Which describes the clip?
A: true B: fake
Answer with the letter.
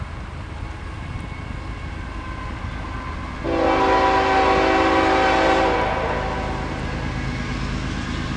A